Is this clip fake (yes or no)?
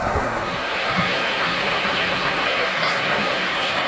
yes